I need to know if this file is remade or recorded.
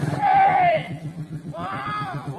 remade